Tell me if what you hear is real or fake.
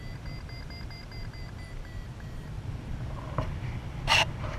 real